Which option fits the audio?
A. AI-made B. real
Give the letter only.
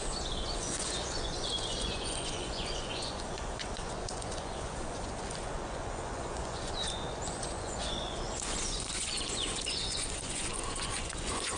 A